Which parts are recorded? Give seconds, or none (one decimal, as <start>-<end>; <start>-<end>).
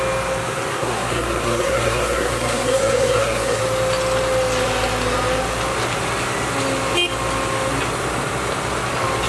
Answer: 0.0-0.7; 3.6-9.3